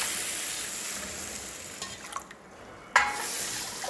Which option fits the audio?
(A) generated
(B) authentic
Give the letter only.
B